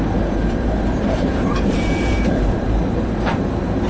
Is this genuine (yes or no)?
no